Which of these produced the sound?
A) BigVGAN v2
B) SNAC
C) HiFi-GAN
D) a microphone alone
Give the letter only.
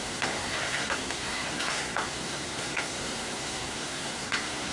B